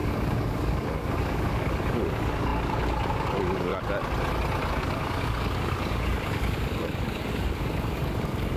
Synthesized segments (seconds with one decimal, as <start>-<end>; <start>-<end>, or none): 0.0-3.7; 4.7-8.6

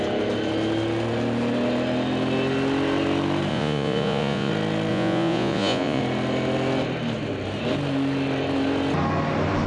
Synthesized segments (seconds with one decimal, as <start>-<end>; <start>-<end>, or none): 3.5-4.5; 4.9-6.0

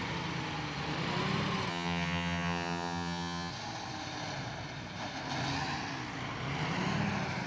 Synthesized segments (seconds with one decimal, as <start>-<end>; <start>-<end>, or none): 1.7-3.5